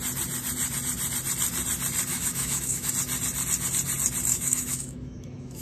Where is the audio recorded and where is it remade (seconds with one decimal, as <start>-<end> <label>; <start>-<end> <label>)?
0.0-2.1 recorded; 2.1-2.9 remade; 2.9-4.3 recorded; 4.3-5.6 remade